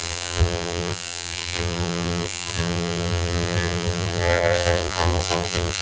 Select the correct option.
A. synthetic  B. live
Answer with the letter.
A